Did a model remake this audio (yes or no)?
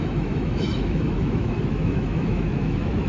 yes